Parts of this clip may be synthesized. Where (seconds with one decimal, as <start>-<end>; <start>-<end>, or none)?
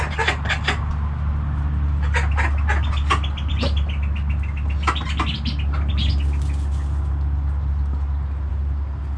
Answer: none